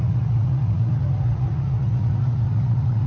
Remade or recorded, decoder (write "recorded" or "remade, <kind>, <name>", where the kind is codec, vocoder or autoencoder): remade, vocoder, Vocos